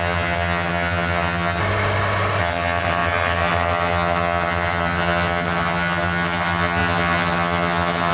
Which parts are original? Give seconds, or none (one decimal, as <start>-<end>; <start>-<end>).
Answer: 1.6-2.4